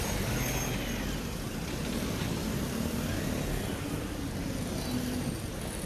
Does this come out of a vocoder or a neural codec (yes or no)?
no